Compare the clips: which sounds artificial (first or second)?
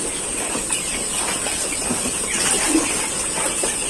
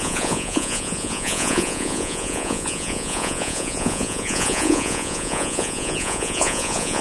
second